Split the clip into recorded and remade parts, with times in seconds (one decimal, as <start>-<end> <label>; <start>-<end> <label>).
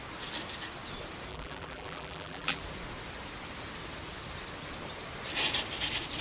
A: 0.0-1.3 recorded; 1.3-2.6 remade; 2.6-6.2 recorded